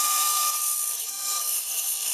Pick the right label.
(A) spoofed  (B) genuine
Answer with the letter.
A